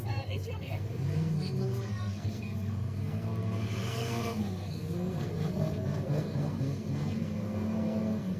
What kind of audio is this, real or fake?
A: fake